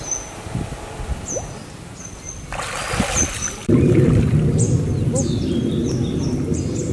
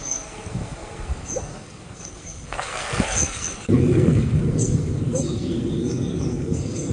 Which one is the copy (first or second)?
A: second